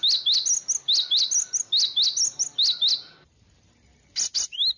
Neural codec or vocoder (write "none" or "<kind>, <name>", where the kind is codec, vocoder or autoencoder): none